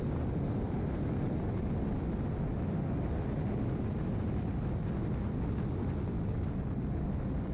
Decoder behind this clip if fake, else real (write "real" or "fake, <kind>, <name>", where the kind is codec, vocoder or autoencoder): real